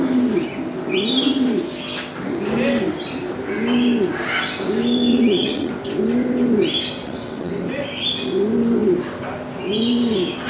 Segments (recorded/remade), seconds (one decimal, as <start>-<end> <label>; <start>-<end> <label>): 0.0-5.1 recorded; 5.1-5.7 remade; 5.7-7.0 recorded; 7.0-7.5 remade; 7.5-10.5 recorded